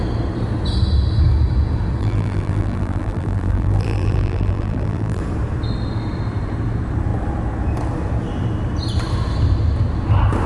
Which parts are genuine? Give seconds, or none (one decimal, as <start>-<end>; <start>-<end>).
0.0-2.0; 5.2-10.5